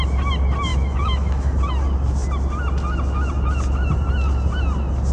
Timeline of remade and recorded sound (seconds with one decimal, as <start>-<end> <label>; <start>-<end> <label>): 0.0-0.7 recorded; 0.7-1.7 remade; 1.7-5.1 recorded